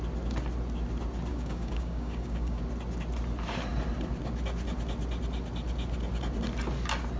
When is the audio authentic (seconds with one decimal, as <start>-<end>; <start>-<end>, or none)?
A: 0.0-1.3; 2.6-7.2